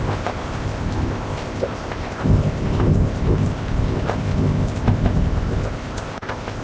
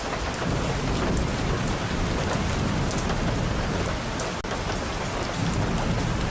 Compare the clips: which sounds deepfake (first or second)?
first